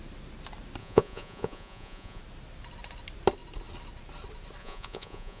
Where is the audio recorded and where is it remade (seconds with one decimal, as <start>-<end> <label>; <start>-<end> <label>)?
0.0-0.8 recorded; 0.8-2.2 remade; 2.2-4.6 recorded; 4.6-5.4 remade